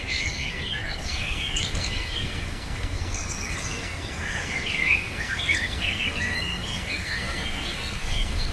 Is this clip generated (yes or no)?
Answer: yes